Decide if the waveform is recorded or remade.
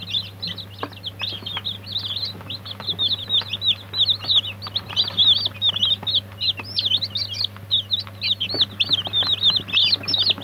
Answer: recorded